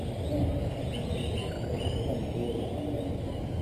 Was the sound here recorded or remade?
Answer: recorded